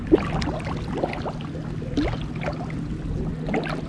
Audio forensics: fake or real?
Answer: real